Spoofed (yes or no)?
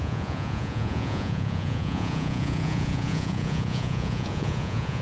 yes